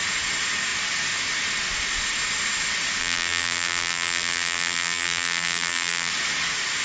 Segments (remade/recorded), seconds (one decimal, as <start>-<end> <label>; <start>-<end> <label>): 0.0-3.0 recorded; 3.0-6.1 remade; 6.1-6.8 recorded